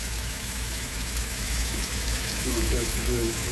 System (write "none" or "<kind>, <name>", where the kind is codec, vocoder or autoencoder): autoencoder, DAC-VAE